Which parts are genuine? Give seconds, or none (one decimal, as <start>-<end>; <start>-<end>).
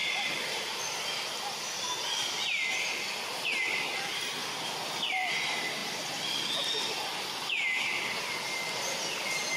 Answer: 0.0-9.6